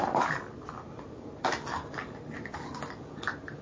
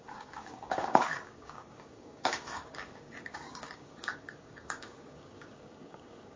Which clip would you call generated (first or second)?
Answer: second